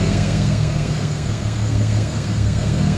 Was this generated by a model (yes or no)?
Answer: yes